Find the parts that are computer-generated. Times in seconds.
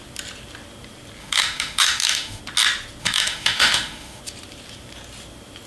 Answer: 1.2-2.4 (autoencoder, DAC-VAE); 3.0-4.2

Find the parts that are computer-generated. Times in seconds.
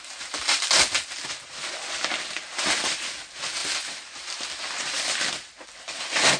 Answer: none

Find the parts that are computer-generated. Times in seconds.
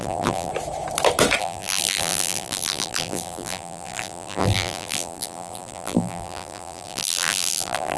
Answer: 0.0-0.5 (vocoder, BigVGAN v2); 1.4-8.0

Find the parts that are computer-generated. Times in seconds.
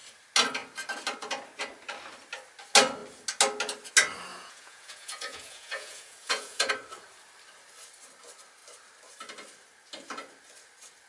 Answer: 4.3-6.7 (vocoder, Vocos)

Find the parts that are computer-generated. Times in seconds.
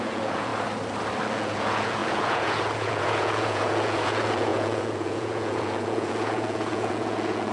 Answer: 0.0-0.5 (vocoder, Vocos); 1.3-7.5